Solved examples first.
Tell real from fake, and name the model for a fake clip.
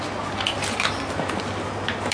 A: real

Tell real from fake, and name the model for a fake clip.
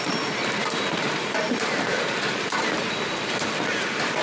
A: fake, vocoder, BigVGAN v2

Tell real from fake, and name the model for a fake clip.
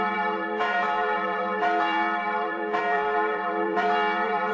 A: fake, vocoder, BigVGAN v2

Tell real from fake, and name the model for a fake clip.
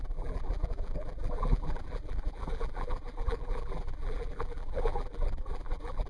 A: fake, vocoder, BigVGAN v2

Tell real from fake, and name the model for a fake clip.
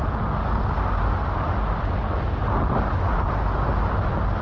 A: real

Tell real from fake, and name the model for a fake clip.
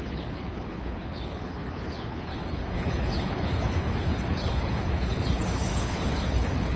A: fake, codec, HILCodec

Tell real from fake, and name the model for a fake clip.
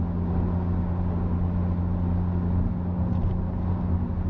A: real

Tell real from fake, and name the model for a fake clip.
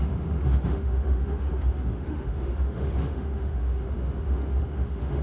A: fake, autoencoder, DAC-VAE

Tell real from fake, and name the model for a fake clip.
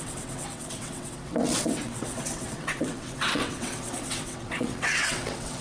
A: fake, vocoder, WaveNeXt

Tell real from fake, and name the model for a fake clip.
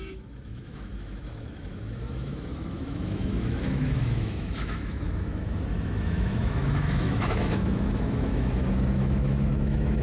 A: fake, autoencoder, DAC-VAE